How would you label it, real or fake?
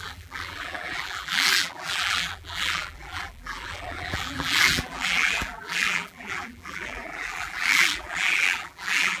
fake